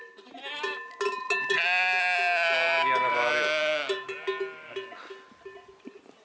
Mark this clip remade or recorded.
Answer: recorded